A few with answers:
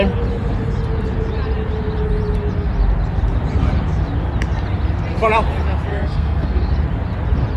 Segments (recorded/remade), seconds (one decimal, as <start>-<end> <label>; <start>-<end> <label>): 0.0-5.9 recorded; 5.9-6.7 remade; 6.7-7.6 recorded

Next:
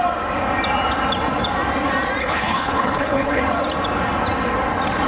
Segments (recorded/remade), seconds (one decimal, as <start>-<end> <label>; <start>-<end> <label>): 0.0-2.2 recorded; 2.2-3.4 remade; 3.4-5.1 recorded

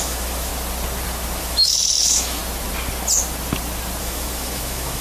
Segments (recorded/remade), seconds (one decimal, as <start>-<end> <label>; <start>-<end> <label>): 0.0-0.5 remade; 0.5-1.4 recorded; 1.4-2.4 remade; 2.4-4.0 recorded; 4.0-5.0 remade

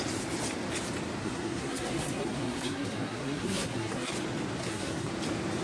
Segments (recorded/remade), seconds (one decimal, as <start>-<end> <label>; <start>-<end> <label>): 0.0-1.2 recorded; 1.2-4.1 remade; 4.1-4.6 recorded; 4.6-5.1 remade; 5.1-5.6 recorded

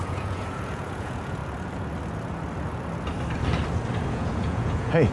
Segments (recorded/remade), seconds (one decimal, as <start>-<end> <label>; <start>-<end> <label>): 0.0-1.4 remade; 1.4-4.1 recorded; 4.1-5.1 remade

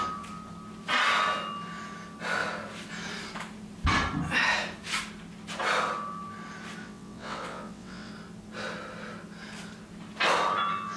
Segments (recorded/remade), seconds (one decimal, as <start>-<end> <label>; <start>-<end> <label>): 0.0-6.8 recorded; 6.8-8.1 remade; 8.1-11.0 recorded

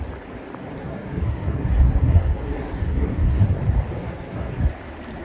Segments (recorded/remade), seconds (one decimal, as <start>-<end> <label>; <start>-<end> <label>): 0.0-0.8 recorded; 0.8-3.6 remade; 3.6-4.0 recorded; 4.0-4.6 remade; 4.6-5.2 recorded

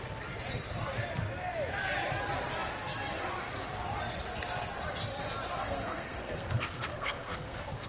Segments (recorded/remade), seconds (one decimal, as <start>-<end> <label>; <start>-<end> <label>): 0.0-5.6 recorded; 5.6-7.9 remade